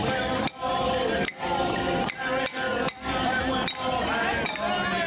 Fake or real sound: real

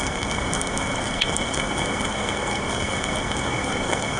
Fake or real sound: fake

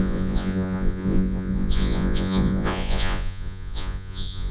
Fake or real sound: fake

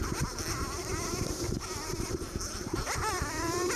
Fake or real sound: fake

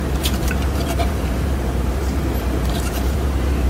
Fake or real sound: fake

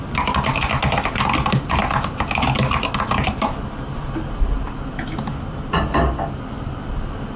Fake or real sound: real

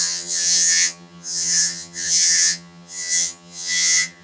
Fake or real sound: fake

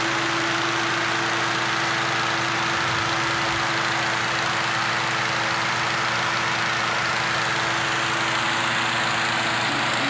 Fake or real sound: real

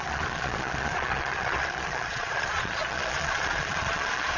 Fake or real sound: fake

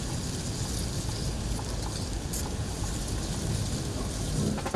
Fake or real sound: real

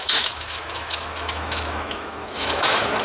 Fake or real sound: fake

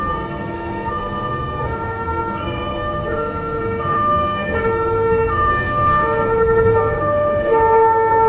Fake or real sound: fake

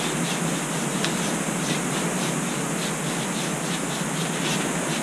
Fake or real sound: real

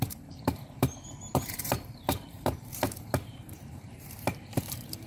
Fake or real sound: fake